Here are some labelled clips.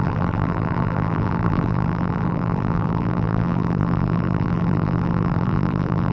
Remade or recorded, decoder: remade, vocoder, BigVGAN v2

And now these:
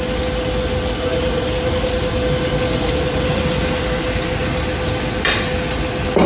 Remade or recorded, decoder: recorded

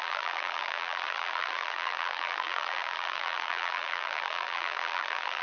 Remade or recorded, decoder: remade, vocoder, BigVGAN v2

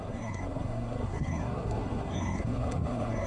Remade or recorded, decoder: remade, codec, SNAC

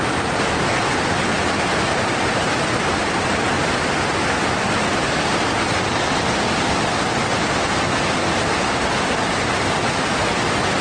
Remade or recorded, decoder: recorded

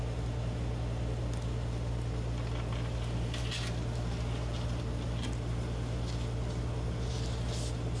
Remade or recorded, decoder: recorded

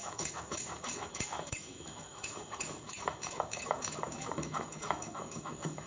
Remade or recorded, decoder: remade, autoencoder, DAC-VAE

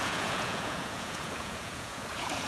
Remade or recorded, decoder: remade, vocoder, Vocos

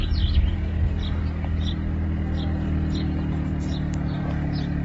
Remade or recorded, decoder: recorded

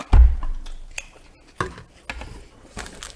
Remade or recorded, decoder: recorded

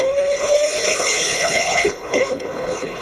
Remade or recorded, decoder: remade, codec, HILCodec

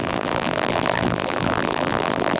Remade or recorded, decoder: remade, vocoder, BigVGAN v2